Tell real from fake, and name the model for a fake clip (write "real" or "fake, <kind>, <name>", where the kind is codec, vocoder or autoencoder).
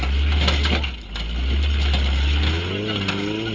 real